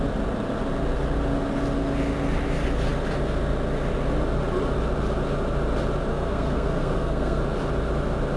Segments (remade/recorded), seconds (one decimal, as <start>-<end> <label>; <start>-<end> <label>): 0.0-6.1 recorded; 6.1-7.4 remade; 7.4-8.4 recorded